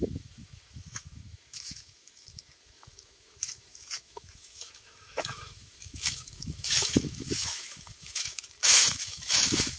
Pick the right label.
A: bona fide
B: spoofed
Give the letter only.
B